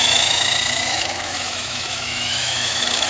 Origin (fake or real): fake